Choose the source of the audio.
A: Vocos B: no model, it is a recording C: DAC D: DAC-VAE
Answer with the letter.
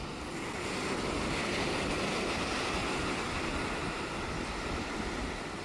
B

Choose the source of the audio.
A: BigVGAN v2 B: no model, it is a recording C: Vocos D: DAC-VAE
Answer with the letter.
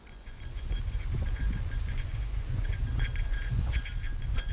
C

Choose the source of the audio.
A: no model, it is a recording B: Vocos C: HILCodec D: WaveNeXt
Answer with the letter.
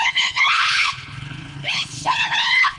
C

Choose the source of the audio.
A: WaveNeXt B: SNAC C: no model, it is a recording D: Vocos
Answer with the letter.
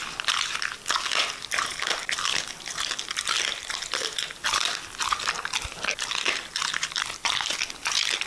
C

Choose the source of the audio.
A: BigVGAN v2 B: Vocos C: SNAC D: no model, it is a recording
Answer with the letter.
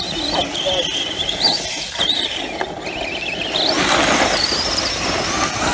D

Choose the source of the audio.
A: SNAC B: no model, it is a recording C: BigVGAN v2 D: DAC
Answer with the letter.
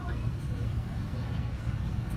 A